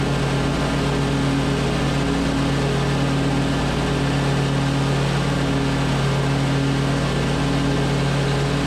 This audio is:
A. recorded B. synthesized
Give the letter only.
A